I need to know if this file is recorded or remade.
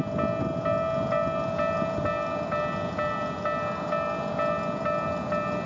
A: recorded